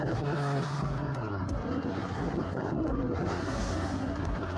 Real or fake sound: fake